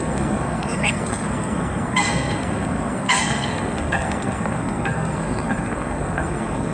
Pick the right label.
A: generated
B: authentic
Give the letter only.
A